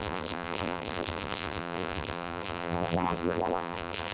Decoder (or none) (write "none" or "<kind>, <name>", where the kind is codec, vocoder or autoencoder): vocoder, BigVGAN v2